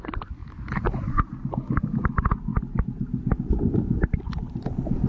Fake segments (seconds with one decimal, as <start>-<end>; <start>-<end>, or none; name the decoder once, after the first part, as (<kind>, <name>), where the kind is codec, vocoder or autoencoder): none